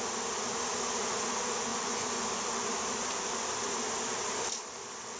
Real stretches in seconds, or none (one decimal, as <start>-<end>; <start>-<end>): 0.0-1.7; 2.4-5.2